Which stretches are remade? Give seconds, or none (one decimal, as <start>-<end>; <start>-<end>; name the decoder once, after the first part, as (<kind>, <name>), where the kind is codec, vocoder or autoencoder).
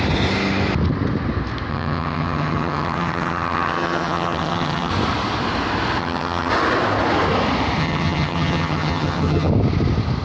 1.7-4.9 (vocoder, HiFi-GAN); 6.0-6.5; 7.8-9.5